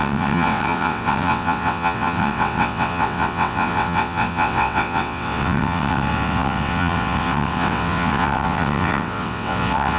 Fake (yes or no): yes